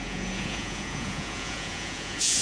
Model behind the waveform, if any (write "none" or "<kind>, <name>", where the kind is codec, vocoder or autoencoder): vocoder, Vocos